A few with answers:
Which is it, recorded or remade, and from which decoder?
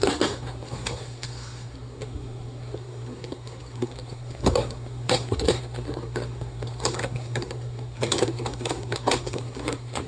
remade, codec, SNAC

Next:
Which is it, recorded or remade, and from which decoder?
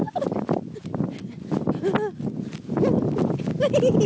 recorded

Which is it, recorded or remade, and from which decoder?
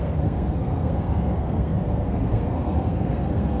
remade, codec, SNAC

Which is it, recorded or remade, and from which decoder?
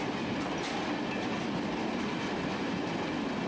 recorded